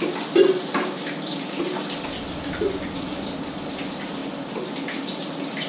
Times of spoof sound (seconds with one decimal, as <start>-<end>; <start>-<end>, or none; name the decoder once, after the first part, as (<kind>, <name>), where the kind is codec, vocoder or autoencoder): none